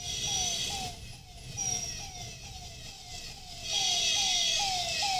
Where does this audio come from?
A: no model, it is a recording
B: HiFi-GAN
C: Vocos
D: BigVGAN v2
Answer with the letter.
A